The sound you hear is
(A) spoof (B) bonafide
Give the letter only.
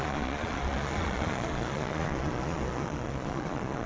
A